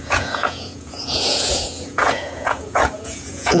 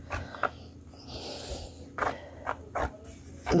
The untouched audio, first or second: second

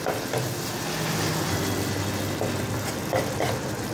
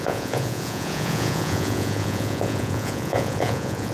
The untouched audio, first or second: first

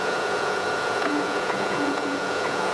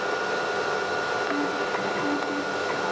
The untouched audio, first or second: second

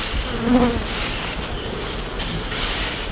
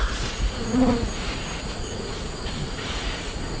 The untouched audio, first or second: first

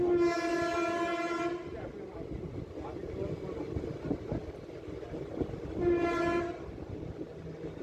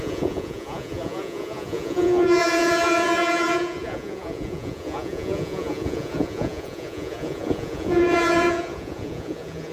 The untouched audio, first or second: first